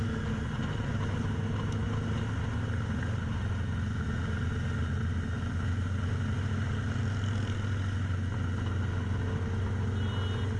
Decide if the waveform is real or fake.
real